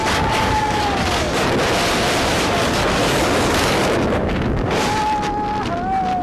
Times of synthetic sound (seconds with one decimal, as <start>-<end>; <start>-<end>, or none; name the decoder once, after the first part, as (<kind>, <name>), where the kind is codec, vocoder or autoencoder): 0.0-1.5 (codec, DAC); 2.3-5.0